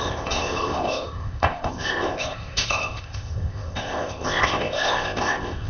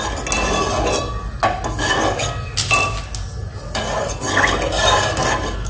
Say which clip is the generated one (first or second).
first